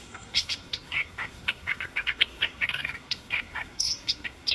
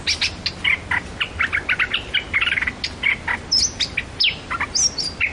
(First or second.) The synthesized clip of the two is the first